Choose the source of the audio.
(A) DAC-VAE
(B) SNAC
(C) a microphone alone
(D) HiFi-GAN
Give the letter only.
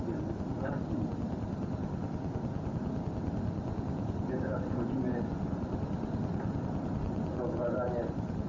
C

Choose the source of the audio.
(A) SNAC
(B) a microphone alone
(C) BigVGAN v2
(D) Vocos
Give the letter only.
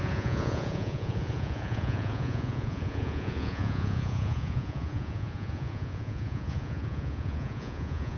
D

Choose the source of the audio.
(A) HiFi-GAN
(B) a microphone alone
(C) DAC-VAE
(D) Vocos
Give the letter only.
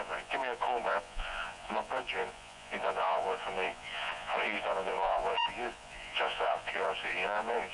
D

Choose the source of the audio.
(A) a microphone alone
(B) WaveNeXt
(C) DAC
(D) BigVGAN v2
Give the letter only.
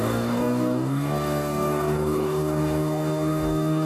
C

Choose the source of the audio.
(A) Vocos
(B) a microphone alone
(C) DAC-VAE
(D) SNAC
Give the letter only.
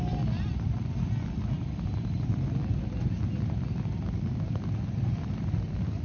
B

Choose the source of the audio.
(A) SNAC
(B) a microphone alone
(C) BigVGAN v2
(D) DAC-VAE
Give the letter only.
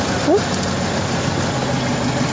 B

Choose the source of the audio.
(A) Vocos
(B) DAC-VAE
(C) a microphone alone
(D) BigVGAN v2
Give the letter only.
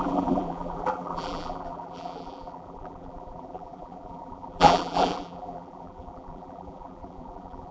D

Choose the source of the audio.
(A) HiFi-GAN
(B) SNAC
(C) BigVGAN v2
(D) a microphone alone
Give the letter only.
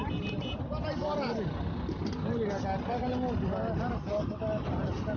D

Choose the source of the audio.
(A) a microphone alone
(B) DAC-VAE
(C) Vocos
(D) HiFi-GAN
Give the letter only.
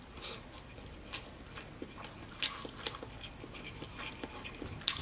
A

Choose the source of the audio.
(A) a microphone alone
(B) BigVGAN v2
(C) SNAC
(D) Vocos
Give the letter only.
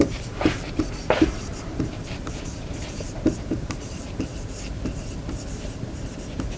B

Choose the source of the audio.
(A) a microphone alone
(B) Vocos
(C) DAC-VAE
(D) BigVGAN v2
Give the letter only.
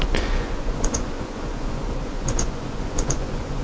B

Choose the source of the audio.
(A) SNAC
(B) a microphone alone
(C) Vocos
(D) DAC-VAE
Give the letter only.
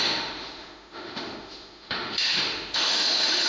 D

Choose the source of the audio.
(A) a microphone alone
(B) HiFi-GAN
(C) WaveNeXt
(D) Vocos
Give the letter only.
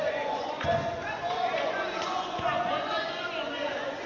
D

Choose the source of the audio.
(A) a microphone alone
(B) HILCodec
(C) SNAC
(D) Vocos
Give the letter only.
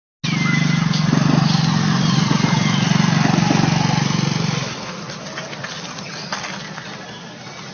A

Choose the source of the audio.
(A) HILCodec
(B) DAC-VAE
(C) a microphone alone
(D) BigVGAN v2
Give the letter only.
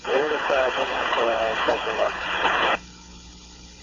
A